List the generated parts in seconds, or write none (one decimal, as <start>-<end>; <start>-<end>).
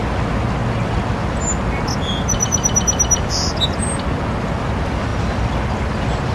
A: none